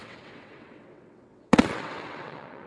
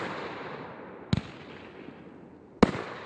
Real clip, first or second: second